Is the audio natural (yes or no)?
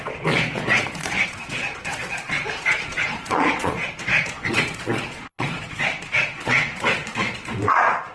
no